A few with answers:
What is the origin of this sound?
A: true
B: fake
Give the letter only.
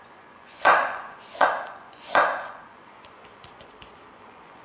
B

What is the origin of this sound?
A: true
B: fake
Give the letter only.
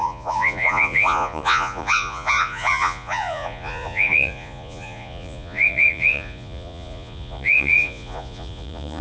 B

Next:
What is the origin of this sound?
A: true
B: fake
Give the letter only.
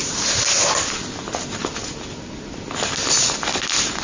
A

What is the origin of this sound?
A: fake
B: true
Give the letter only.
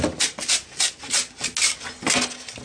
B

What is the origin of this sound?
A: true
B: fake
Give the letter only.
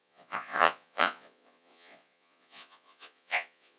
B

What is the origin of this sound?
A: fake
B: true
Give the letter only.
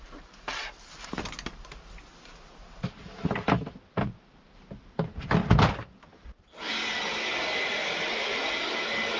B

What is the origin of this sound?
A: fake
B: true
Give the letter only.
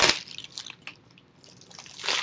B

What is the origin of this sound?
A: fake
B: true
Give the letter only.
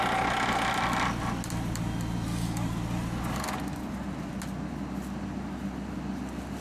B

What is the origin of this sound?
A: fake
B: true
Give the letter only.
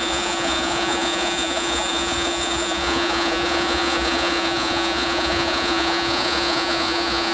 A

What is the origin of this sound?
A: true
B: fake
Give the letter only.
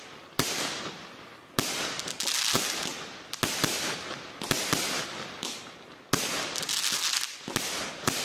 A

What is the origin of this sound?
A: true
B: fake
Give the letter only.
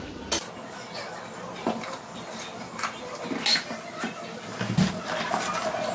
A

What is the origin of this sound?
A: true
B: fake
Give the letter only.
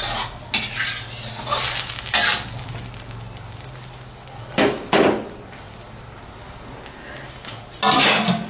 A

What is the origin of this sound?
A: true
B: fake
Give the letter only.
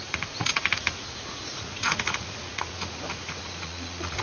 B